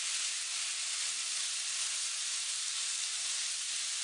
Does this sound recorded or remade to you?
remade